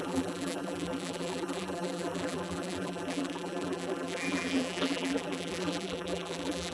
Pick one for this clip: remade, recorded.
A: remade